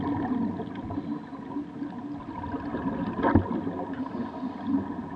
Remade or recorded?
recorded